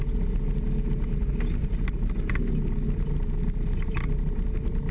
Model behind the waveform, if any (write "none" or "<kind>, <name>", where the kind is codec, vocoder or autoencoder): none